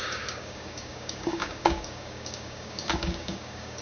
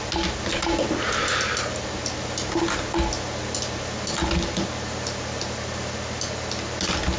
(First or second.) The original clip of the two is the second